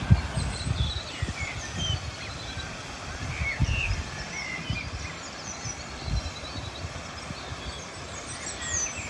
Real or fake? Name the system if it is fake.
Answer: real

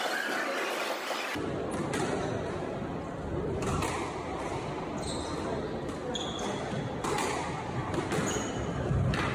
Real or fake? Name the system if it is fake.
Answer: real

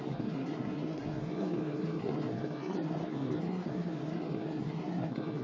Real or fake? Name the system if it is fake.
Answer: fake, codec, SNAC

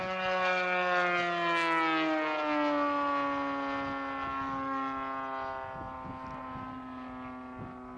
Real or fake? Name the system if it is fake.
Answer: real